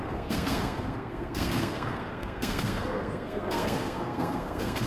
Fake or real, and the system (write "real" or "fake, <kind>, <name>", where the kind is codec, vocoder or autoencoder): fake, codec, SNAC